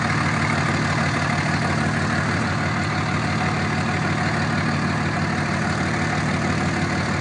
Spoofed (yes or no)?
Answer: no